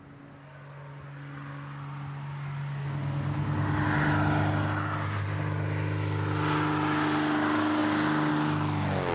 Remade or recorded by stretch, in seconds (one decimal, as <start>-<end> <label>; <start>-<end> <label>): 0.0-9.1 recorded

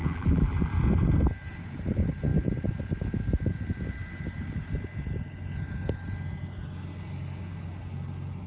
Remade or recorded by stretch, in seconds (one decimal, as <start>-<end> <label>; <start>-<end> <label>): 0.0-0.7 remade; 0.7-8.5 recorded

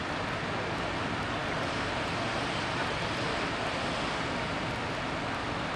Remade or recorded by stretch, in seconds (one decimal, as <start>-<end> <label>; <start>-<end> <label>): 0.0-5.8 recorded

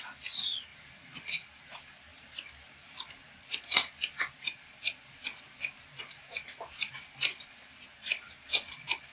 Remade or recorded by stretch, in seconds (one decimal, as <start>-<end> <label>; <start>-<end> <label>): 0.0-0.7 recorded; 0.7-1.3 remade; 1.3-2.1 recorded; 2.1-6.0 remade; 6.0-9.1 recorded